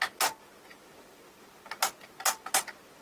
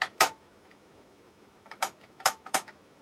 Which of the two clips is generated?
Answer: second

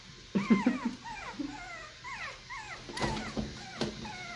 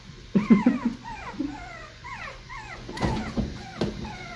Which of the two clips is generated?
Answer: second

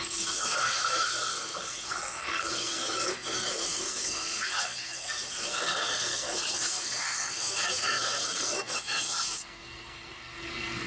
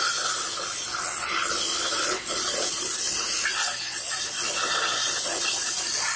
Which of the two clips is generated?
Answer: first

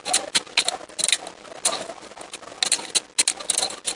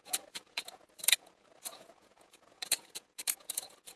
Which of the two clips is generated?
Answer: second